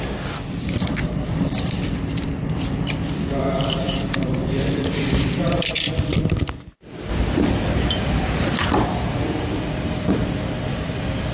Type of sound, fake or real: fake